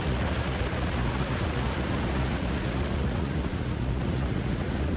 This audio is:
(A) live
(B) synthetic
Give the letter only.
B